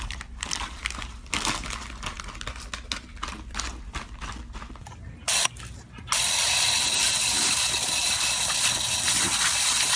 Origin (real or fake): real